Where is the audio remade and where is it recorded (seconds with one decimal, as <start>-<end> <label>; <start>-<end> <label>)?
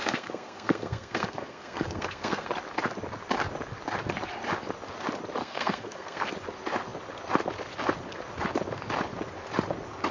0.0-2.5 remade; 2.5-5.4 recorded; 5.4-6.3 remade; 6.3-10.1 recorded